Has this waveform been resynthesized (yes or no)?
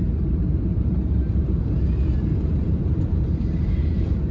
yes